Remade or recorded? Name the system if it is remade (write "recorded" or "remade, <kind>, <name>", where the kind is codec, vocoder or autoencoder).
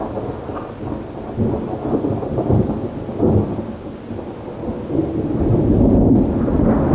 recorded